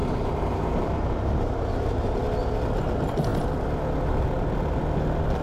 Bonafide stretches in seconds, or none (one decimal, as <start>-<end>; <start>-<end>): 2.2-5.4